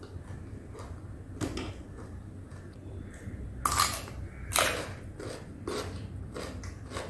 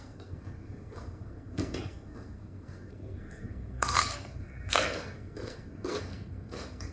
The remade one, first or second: second